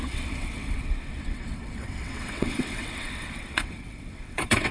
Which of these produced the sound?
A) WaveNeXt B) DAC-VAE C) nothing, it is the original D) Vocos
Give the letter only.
A